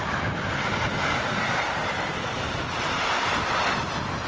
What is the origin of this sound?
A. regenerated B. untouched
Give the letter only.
B